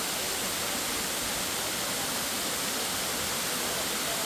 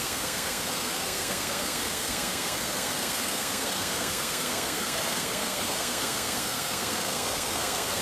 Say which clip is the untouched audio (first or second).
first